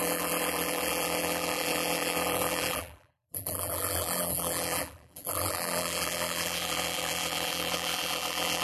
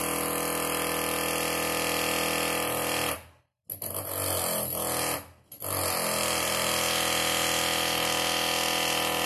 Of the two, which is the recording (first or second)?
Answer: second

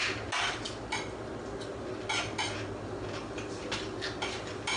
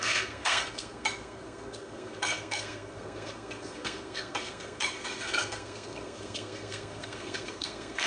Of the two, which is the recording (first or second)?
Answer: first